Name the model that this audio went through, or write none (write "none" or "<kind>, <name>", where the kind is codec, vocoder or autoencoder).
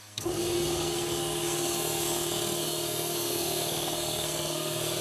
codec, SNAC